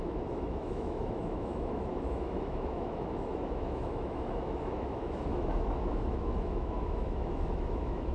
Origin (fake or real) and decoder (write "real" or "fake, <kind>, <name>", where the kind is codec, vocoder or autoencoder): fake, autoencoder, DAC-VAE